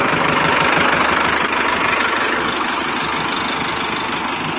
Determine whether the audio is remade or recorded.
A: recorded